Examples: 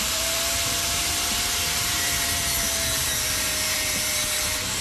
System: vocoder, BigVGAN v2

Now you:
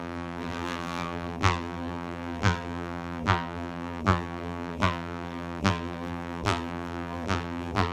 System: vocoder, BigVGAN v2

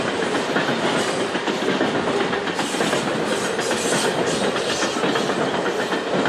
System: none